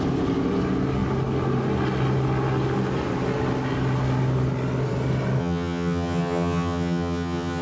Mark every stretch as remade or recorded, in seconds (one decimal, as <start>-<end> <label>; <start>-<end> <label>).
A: 0.0-5.4 recorded; 5.4-7.6 remade